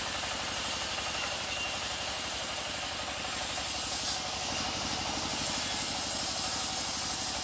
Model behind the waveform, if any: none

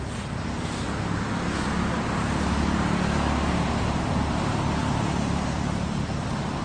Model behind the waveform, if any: none